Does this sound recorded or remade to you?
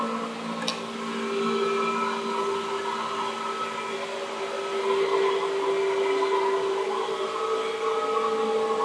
recorded